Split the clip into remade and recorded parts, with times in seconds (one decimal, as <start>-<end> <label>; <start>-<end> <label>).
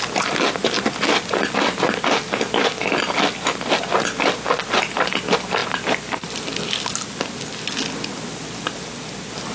0.0-5.6 recorded; 5.6-6.8 remade; 6.8-9.5 recorded